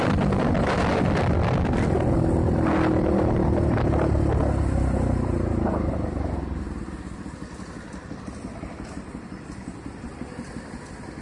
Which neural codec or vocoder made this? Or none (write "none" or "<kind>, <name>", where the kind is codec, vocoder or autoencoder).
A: none